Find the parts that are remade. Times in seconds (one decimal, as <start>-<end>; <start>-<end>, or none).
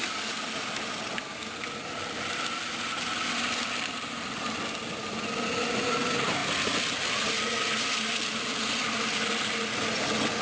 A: none